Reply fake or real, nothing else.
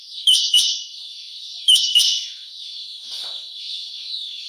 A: fake